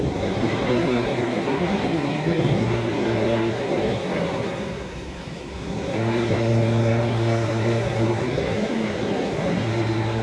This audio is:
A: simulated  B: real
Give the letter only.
A